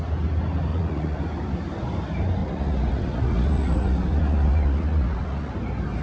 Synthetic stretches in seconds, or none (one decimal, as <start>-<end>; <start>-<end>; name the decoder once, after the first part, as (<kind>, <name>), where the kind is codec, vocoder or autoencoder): 0.7-1.2 (vocoder, Vocos); 2.4-5.5